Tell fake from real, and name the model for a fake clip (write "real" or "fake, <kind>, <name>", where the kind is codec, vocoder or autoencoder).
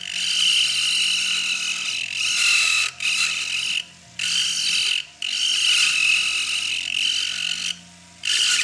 real